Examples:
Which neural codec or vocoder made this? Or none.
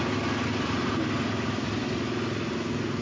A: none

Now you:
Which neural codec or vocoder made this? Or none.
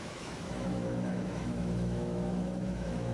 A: autoencoder, DAC-VAE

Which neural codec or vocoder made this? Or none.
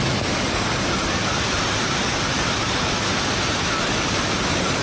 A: none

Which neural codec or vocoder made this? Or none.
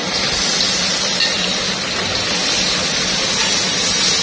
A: none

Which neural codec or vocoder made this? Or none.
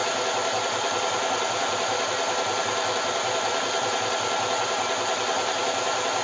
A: vocoder, BigVGAN v2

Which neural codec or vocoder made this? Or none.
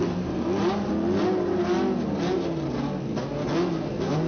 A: none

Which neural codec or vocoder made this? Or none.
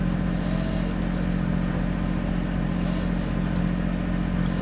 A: none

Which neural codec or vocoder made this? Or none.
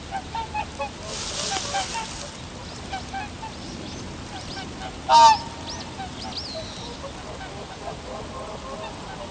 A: none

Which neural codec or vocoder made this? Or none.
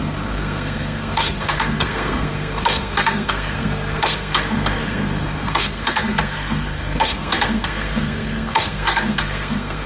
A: codec, SNAC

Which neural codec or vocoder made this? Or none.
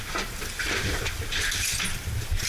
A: none